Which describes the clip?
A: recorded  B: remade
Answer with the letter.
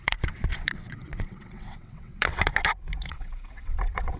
B